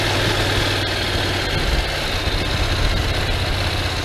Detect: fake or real real